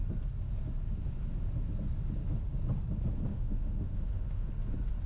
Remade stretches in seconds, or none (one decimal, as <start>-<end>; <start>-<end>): 3.3-4.5

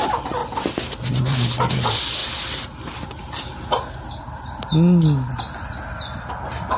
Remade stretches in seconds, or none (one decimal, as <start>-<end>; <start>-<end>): none

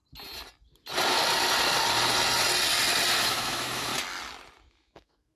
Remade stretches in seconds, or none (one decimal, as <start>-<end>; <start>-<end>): 3.2-3.9; 4.7-5.4

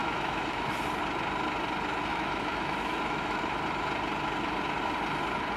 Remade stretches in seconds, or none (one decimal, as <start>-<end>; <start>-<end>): 0.0-0.7; 2.1-3.4